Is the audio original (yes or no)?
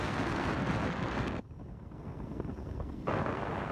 no